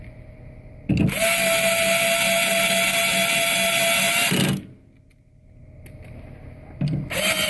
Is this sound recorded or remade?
recorded